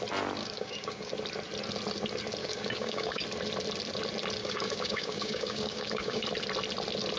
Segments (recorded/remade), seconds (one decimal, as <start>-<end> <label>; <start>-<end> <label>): 0.0-0.4 recorded; 0.4-1.1 remade; 1.1-2.4 recorded; 2.4-3.2 remade; 3.2-4.4 recorded; 4.4-6.2 remade; 6.2-7.2 recorded